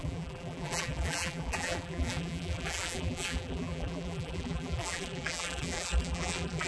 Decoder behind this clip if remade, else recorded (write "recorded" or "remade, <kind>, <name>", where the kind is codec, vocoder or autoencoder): remade, vocoder, BigVGAN v2